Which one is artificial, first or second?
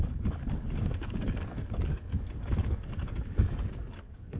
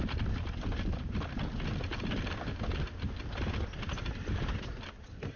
first